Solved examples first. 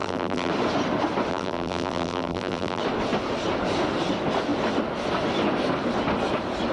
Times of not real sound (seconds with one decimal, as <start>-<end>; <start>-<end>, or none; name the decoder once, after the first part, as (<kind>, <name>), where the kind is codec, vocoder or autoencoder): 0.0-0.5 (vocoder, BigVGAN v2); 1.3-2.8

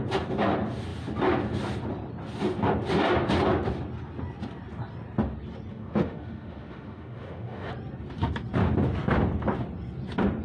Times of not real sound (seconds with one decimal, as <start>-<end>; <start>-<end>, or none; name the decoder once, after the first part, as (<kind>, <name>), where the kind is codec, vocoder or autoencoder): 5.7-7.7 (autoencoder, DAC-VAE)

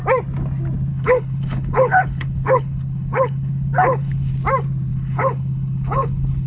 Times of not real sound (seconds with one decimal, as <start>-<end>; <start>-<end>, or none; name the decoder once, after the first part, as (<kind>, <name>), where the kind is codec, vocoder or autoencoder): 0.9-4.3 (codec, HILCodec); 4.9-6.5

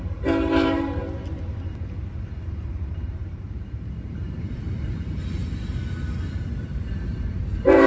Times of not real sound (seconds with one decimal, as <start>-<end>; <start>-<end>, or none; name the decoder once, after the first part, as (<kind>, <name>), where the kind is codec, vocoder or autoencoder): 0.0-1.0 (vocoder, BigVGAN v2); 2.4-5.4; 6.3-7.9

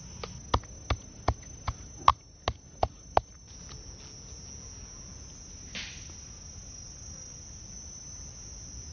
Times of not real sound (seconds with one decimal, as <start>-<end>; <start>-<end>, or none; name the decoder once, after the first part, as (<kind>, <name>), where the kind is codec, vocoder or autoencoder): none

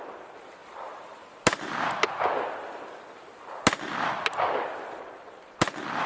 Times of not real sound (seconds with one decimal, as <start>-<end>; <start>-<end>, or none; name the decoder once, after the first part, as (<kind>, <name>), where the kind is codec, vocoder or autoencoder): none